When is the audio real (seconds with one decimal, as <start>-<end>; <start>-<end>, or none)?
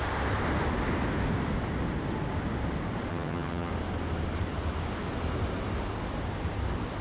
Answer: 0.0-3.1; 3.7-7.0